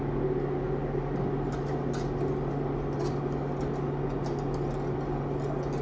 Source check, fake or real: real